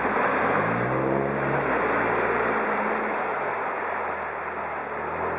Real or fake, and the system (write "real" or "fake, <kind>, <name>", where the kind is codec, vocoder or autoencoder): real